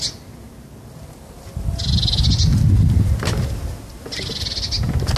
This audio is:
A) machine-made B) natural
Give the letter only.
B